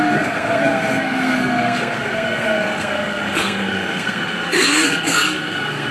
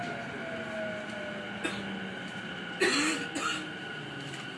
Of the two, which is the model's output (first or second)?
first